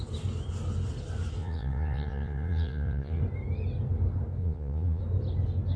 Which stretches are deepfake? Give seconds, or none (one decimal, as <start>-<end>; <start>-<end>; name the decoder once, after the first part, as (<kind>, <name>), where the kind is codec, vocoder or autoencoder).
1.4-3.2 (vocoder, Vocos); 4.4-5.0